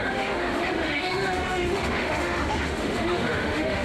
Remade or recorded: remade